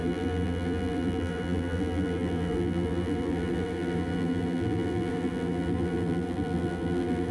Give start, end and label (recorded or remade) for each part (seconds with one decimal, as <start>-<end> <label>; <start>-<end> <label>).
0.0-7.3 remade